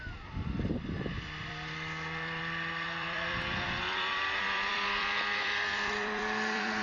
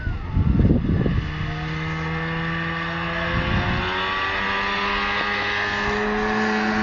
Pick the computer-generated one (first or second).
first